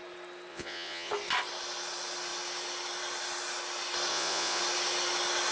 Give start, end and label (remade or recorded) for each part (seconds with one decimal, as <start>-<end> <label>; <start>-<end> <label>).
0.0-0.5 recorded; 0.5-1.1 remade; 1.1-4.1 recorded; 4.1-4.6 remade; 4.6-5.5 recorded